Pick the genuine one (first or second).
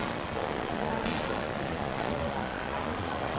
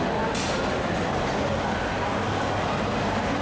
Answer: second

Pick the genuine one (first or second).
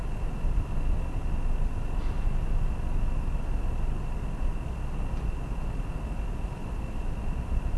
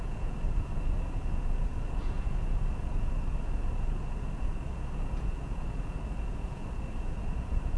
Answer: first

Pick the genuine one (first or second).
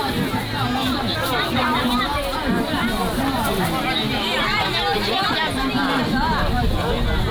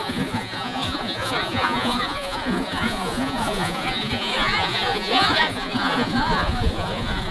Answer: first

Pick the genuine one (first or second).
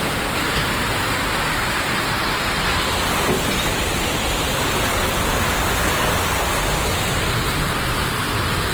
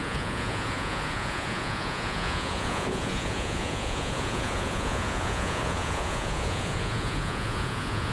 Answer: first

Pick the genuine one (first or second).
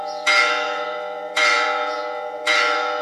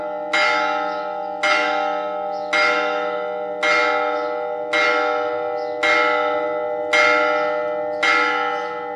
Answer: second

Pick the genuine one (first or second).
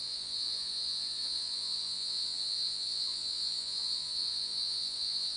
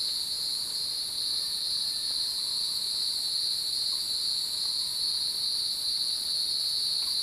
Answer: second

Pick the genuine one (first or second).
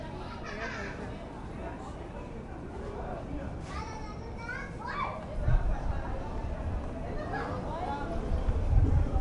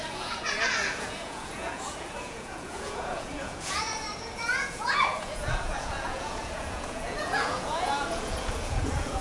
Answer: first